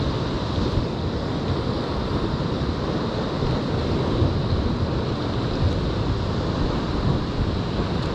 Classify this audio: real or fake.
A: real